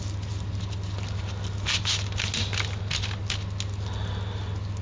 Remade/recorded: recorded